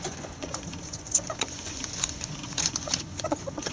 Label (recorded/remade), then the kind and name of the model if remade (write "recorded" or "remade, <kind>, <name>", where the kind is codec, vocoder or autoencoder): remade, vocoder, Vocos